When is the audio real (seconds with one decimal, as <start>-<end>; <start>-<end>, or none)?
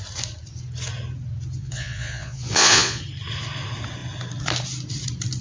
0.0-1.6; 3.0-5.4